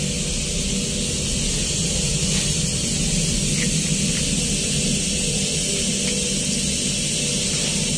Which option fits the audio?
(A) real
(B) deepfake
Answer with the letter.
A